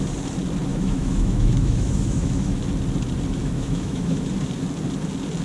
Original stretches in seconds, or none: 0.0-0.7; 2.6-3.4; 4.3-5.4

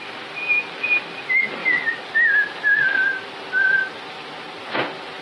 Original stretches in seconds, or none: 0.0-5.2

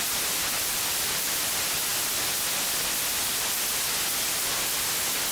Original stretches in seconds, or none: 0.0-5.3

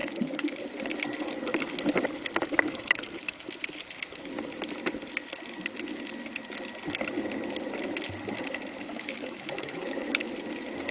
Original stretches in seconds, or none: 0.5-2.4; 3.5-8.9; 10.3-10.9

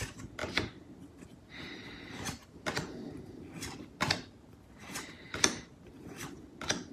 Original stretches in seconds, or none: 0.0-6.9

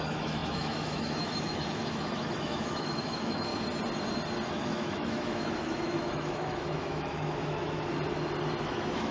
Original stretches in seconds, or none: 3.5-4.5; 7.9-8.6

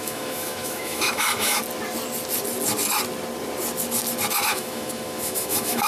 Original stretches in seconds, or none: 1.6-4.3

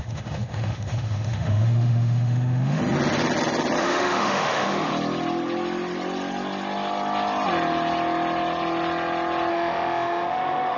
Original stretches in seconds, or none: 2.8-3.8; 4.9-9.5